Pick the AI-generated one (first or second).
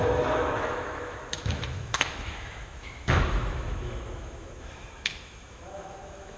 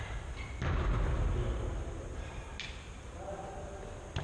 first